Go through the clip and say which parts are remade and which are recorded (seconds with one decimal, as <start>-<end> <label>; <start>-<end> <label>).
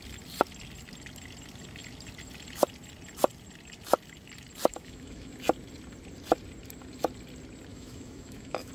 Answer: 0.0-4.7 recorded; 4.7-5.3 remade; 5.3-7.7 recorded; 7.7-8.7 remade